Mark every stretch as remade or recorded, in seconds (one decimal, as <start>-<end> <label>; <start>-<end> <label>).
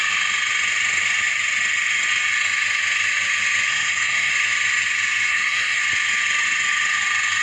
0.0-3.7 recorded; 3.7-4.3 remade; 4.3-5.3 recorded; 5.3-5.8 remade; 5.8-7.4 recorded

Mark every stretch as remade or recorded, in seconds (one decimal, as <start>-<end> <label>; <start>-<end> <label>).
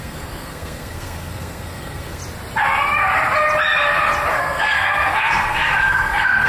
0.0-2.2 remade; 2.2-4.3 recorded; 4.3-6.5 remade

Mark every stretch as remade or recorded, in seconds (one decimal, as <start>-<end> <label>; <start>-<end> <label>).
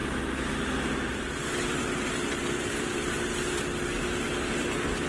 0.0-5.1 recorded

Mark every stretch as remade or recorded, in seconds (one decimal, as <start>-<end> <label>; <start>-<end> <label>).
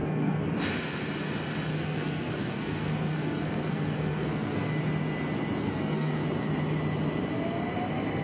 0.0-0.5 remade; 0.5-1.7 recorded; 1.7-4.7 remade; 4.7-5.6 recorded; 5.6-6.2 remade; 6.2-8.2 recorded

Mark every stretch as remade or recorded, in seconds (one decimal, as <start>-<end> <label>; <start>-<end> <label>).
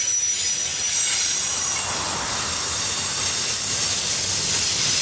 0.0-5.0 recorded